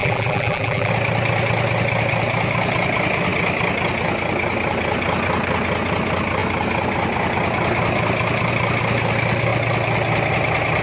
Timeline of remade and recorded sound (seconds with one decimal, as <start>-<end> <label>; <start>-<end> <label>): 0.0-0.9 remade; 0.9-10.8 recorded